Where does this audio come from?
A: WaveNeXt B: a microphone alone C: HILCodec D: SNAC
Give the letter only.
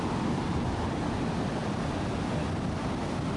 B